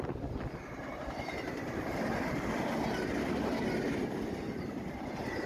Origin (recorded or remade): recorded